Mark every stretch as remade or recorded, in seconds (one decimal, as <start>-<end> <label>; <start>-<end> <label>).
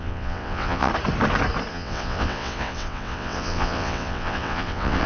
0.0-0.9 remade; 0.9-1.7 recorded; 1.7-5.1 remade